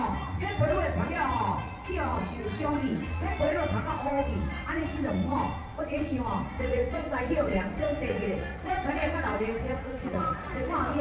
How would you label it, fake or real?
fake